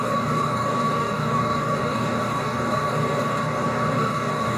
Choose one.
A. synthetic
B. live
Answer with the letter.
A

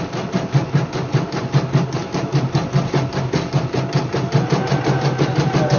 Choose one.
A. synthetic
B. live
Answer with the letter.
B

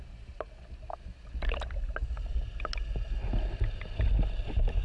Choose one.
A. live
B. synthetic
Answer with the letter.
A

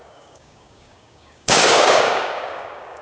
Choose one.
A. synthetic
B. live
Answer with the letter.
A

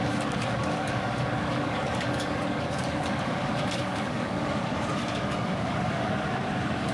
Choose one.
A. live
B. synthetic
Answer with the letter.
B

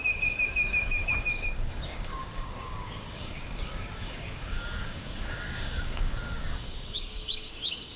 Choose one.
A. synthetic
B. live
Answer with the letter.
A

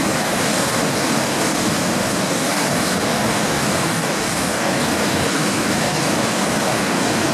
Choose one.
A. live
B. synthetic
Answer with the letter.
B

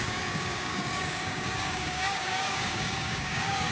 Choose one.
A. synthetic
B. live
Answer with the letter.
A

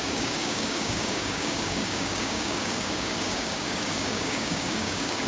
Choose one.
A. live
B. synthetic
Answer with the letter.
B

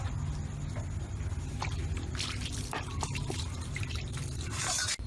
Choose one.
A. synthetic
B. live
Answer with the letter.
B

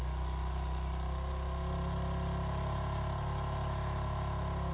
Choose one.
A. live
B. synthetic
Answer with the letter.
A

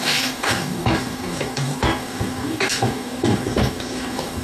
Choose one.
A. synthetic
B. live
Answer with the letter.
A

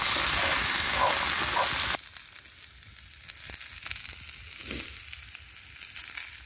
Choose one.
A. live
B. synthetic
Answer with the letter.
A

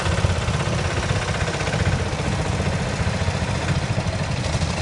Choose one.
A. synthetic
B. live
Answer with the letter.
B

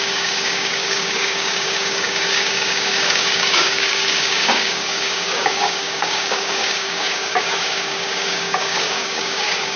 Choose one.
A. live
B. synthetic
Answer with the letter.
B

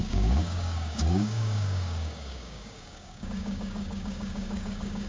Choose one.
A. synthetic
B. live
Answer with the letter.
A